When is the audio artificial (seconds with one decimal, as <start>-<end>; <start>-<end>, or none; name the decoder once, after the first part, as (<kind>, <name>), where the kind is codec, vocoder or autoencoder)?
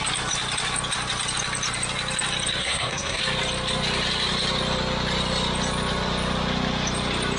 2.6-3.2 (codec, SNAC)